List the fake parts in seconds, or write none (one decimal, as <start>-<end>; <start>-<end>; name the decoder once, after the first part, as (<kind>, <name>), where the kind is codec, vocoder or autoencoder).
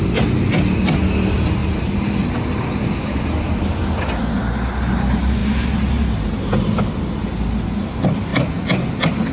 none